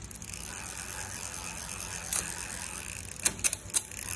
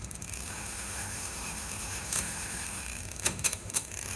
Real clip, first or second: first